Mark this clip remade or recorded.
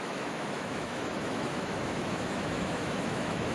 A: remade